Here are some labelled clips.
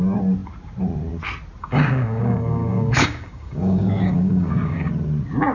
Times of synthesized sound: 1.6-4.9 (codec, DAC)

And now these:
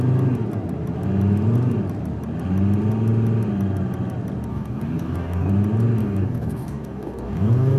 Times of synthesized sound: 4.5-5.5 (codec, DAC); 6.0-7.8

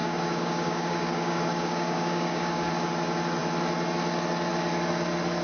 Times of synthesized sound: 0.0-2.7 (codec, DAC)

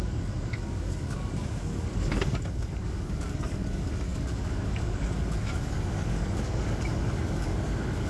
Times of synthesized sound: 0.0-8.1 (codec, DAC)